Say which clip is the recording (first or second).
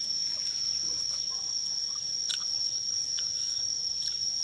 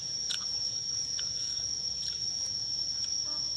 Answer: first